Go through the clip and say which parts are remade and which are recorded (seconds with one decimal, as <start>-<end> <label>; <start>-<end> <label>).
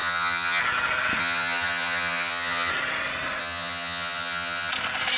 0.0-0.6 remade; 0.6-1.2 recorded; 1.2-2.7 remade; 2.7-3.4 recorded; 3.4-4.7 remade; 4.7-5.2 recorded